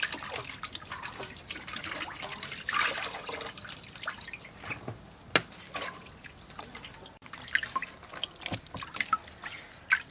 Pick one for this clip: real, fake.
real